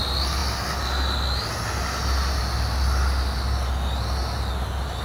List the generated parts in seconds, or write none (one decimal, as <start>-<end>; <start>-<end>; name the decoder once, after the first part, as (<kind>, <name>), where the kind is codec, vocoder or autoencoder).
none